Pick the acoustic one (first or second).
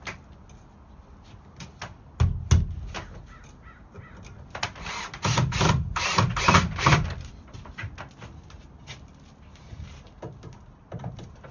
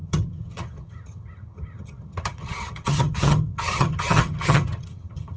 first